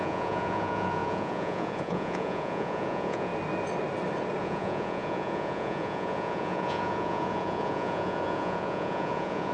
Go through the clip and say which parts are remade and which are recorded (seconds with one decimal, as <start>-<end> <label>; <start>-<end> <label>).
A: 0.0-3.3 remade; 3.3-4.4 recorded; 4.4-9.5 remade